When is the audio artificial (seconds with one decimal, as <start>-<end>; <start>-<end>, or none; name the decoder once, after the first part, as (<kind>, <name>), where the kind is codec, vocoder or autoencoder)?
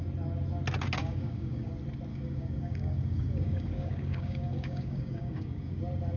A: 1.0-1.7 (codec, DAC); 2.1-5.8